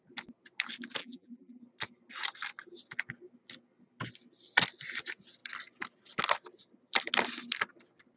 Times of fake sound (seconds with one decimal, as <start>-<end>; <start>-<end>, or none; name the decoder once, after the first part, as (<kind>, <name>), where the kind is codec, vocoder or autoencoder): 1.0-1.6 (vocoder, BigVGAN v2)